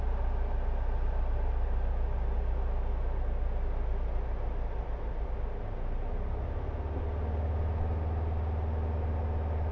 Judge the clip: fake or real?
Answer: real